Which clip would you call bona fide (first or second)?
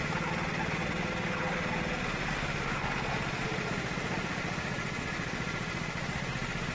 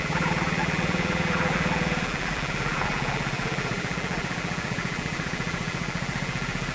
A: first